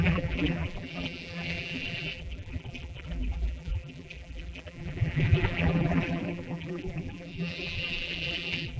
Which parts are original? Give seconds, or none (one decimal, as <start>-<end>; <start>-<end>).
none